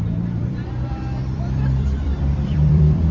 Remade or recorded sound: remade